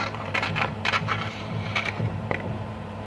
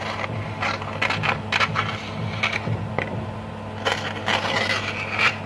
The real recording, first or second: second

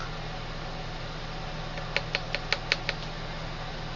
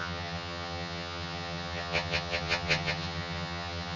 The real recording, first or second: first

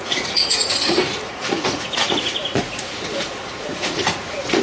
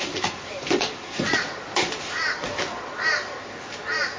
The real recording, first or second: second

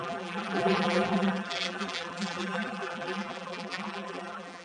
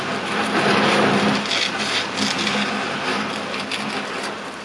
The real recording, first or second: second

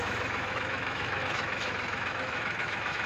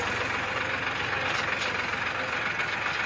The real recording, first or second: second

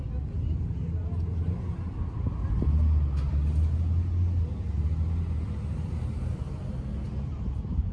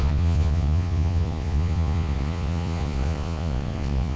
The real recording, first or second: first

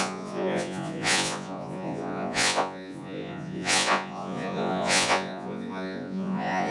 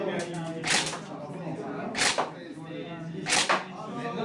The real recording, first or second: second